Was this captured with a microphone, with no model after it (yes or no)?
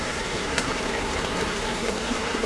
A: no